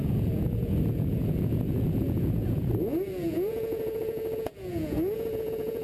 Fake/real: fake